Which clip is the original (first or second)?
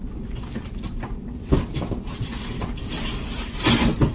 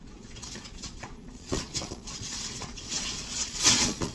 first